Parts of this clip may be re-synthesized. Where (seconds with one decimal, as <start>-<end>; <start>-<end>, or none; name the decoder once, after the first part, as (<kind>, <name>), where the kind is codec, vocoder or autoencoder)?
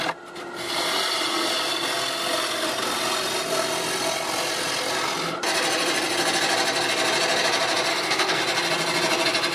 7.9-8.4 (codec, SNAC)